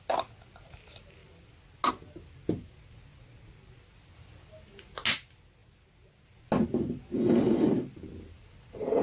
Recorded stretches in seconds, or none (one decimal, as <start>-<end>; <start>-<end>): 0.0-9.0